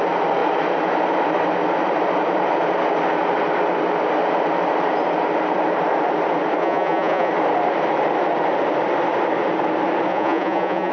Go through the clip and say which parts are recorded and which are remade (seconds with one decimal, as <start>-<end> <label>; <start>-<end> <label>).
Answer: 0.0-6.6 recorded; 6.6-7.3 remade; 7.3-10.1 recorded; 10.1-10.9 remade